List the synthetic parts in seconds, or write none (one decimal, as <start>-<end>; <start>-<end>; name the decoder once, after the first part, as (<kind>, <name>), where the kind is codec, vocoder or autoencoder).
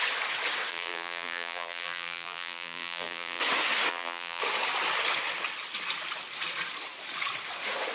0.7-3.4 (vocoder, BigVGAN v2); 3.9-4.4